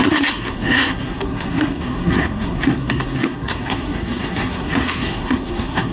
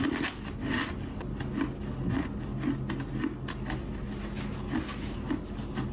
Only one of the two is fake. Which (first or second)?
first